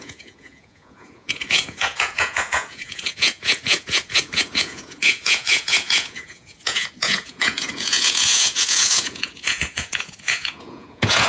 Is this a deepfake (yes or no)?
yes